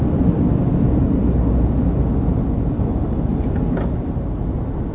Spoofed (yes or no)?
no